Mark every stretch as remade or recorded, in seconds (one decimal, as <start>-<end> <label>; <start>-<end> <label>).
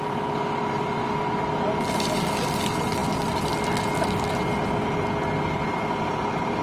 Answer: 0.0-6.6 recorded